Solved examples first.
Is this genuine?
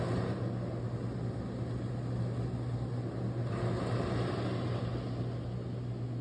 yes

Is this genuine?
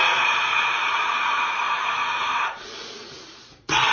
no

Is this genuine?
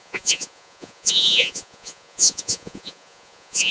no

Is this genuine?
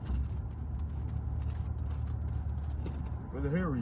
yes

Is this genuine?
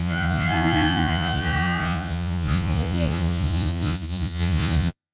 no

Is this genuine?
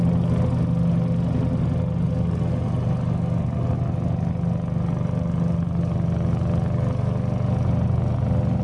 yes